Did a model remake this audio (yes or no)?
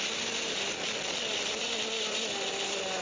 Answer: no